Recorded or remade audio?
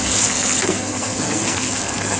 remade